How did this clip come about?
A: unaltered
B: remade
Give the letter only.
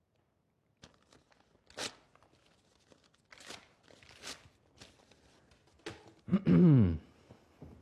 A